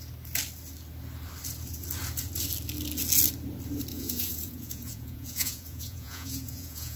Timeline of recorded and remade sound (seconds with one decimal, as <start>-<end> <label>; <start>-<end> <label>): 0.0-3.9 recorded; 3.9-7.0 remade